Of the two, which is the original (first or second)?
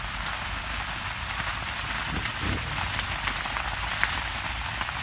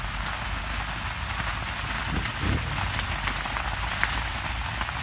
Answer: second